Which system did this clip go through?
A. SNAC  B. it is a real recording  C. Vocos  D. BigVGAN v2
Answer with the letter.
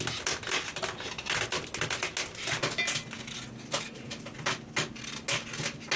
B